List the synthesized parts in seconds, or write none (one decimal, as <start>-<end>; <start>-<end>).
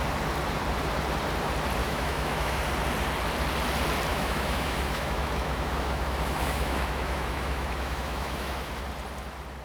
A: 1.8-2.6; 4.1-8.7